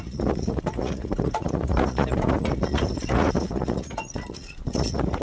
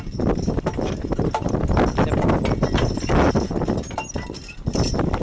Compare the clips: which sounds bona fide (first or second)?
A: second